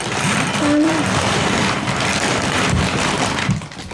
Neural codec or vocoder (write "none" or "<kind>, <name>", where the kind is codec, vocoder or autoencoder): vocoder, BigVGAN v2